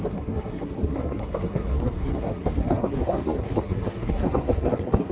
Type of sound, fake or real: fake